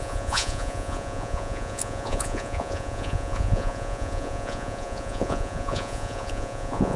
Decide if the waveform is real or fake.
fake